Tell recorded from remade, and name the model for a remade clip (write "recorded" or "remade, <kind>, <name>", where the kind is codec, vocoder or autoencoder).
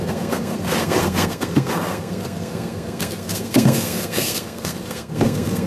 remade, codec, SNAC